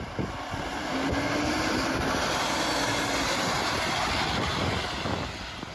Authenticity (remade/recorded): recorded